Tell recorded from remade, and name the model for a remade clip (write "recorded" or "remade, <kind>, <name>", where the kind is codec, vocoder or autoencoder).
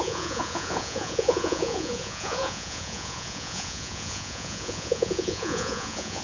remade, vocoder, Vocos